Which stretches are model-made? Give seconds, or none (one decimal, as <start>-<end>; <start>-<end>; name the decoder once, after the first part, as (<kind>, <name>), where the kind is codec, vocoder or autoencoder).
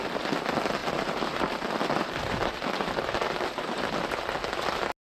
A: 0.8-3.8 (vocoder, BigVGAN v2)